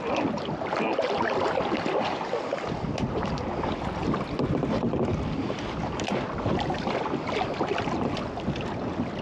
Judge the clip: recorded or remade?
recorded